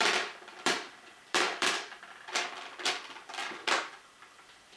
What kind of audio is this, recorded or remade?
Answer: remade